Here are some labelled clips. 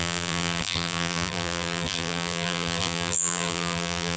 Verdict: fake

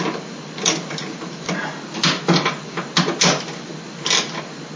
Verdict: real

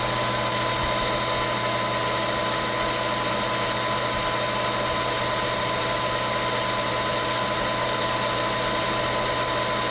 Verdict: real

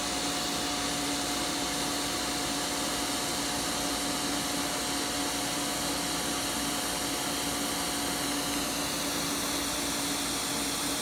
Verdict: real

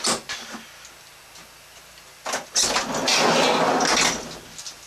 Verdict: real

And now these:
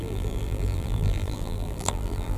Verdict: fake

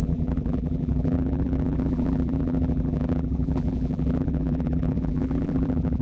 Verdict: fake